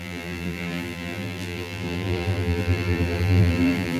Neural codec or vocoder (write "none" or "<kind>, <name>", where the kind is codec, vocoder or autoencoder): vocoder, BigVGAN v2